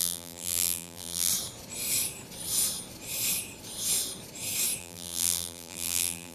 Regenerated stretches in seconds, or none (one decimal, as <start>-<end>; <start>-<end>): 0.0-1.3; 4.8-6.3